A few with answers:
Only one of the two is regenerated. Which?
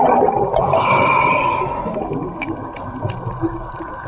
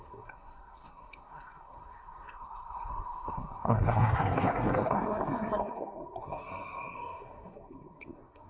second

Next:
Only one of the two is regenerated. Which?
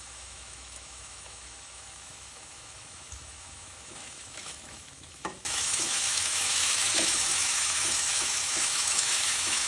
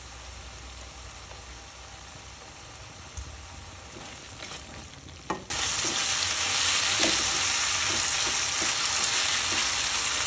first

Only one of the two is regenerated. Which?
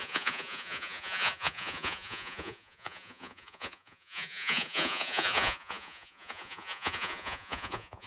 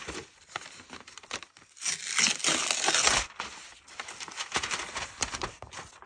first